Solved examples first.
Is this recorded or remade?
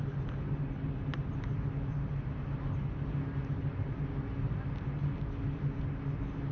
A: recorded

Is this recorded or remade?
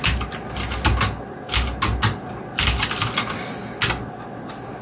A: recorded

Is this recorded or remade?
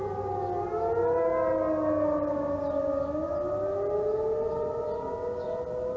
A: recorded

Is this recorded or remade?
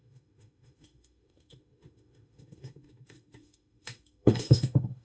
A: remade